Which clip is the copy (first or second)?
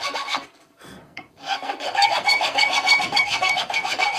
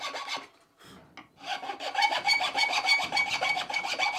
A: first